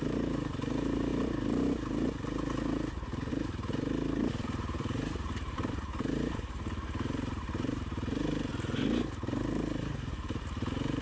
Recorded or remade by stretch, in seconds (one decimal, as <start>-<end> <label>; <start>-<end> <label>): 0.0-1.1 remade; 1.1-3.3 recorded; 3.3-8.5 remade; 8.5-9.8 recorded; 9.8-11.0 remade